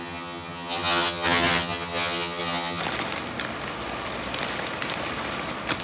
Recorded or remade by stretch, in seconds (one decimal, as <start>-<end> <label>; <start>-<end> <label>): 0.0-2.8 remade; 2.8-5.8 recorded